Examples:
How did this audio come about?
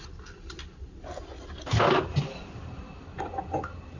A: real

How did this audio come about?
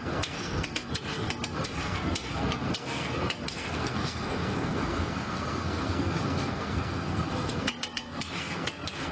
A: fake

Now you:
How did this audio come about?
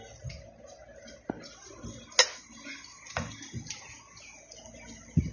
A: real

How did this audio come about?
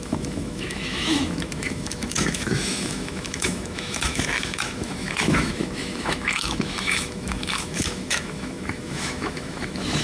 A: fake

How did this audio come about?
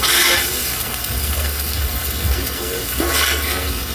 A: fake